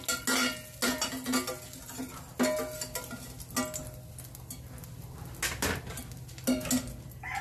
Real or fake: real